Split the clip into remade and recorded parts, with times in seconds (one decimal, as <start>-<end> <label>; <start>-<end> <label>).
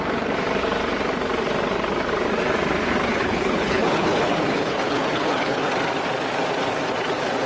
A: 0.0-3.0 recorded; 3.0-5.7 remade; 5.7-7.5 recorded